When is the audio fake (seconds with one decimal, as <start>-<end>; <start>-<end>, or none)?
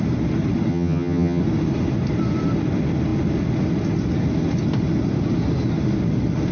0.7-1.4